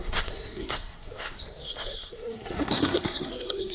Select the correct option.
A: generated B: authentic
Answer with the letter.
A